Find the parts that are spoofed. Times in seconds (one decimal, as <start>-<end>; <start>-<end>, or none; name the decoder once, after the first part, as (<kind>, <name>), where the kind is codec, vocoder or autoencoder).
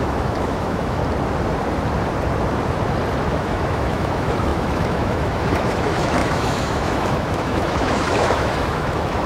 0.0-1.0 (autoencoder, DAC-VAE); 3.3-9.3